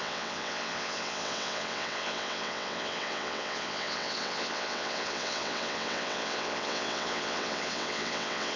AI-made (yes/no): yes